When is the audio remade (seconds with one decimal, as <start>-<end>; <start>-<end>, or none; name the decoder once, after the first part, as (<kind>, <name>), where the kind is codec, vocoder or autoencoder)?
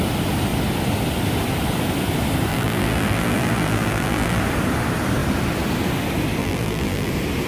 2.5-4.4 (vocoder, BigVGAN v2); 6.4-7.1